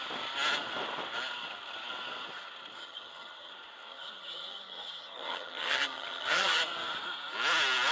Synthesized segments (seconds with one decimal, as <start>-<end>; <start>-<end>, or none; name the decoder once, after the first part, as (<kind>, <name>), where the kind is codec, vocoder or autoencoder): 2.8-3.5 (vocoder, HiFi-GAN); 3.9-6.6